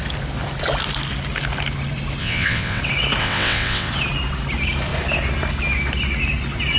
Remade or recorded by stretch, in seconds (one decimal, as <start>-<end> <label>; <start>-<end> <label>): 0.0-2.2 recorded; 2.2-2.8 remade; 2.8-3.2 recorded; 3.2-3.9 remade; 3.9-6.8 recorded